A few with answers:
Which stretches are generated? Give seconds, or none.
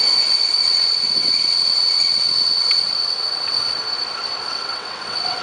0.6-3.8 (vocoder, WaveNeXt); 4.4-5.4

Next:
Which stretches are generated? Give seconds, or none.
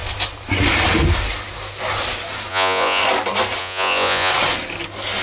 2.5-3.0 (vocoder, Vocos); 3.6-4.3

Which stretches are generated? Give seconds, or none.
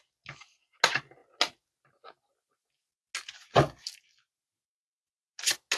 none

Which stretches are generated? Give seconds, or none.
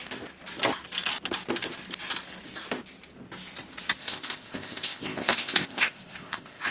4.0-6.7 (codec, ZipCodec)